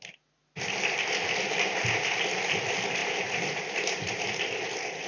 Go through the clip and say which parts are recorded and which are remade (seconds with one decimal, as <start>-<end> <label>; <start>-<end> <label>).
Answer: 0.0-5.1 recorded